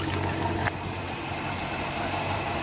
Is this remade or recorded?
recorded